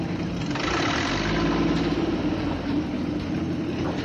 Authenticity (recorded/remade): remade